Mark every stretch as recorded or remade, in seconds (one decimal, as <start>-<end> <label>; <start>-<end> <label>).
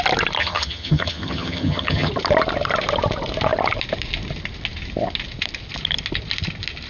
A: 0.0-0.4 recorded; 0.4-2.1 remade; 2.1-6.9 recorded